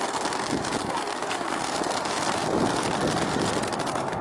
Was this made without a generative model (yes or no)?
yes